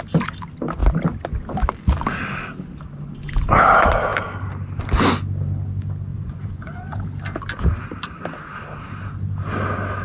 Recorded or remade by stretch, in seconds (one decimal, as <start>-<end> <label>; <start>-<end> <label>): 0.0-6.1 recorded; 6.1-7.0 remade; 7.0-10.0 recorded